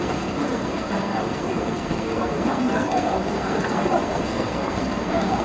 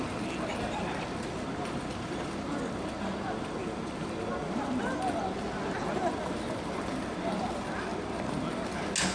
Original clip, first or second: second